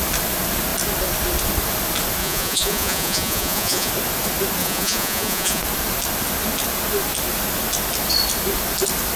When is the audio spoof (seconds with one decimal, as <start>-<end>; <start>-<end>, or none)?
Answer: 2.2-3.9; 4.6-5.6